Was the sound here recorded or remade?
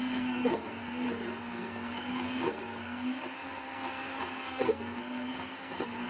remade